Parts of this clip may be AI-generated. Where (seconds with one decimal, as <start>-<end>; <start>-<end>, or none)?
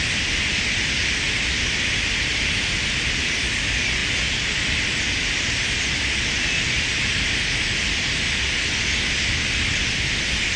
none